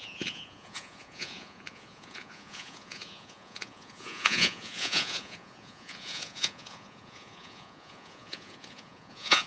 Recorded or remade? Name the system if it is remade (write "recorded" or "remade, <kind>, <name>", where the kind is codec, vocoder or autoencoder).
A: remade, vocoder, Vocos